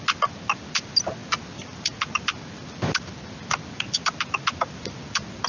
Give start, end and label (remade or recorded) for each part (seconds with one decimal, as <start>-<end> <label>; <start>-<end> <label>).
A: 0.0-5.5 recorded